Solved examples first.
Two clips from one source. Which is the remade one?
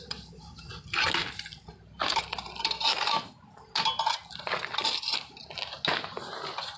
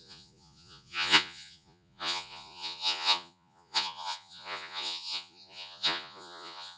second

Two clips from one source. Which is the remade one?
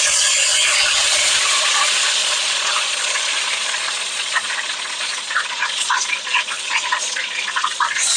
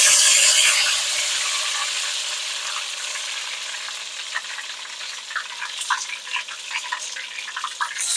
first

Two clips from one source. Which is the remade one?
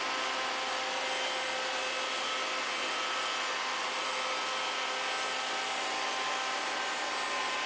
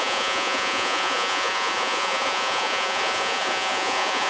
second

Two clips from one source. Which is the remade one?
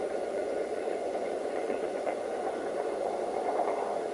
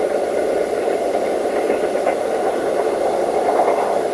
first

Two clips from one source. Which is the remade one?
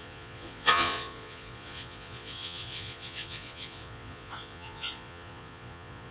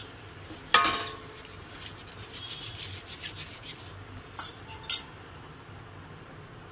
first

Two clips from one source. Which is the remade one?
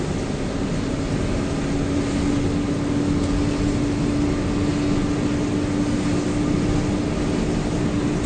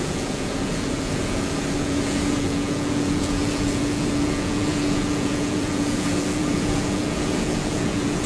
second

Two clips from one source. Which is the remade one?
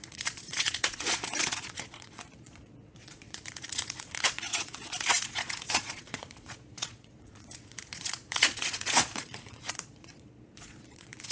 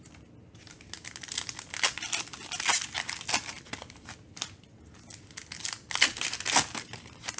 first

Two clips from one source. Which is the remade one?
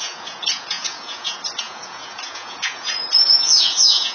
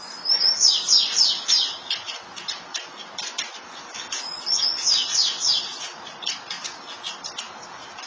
first